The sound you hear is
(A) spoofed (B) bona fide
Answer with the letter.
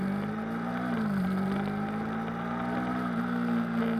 B